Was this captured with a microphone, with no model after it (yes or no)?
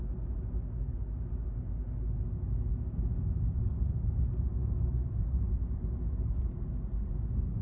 yes